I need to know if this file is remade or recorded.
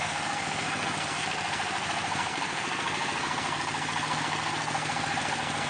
remade